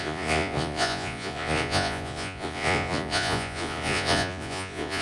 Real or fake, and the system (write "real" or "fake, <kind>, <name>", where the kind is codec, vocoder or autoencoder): fake, vocoder, Vocos